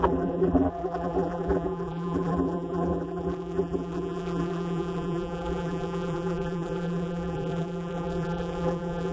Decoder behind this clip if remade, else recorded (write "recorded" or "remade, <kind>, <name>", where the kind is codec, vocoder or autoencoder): remade, vocoder, BigVGAN v2